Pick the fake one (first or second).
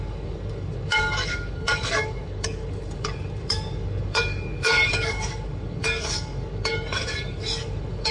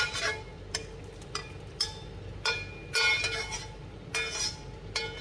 first